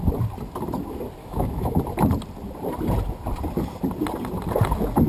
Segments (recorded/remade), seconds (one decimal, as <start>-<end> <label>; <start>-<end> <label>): 0.0-1.2 recorded; 1.2-1.8 remade; 1.8-5.1 recorded